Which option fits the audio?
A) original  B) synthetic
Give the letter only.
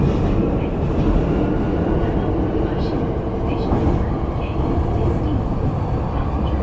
A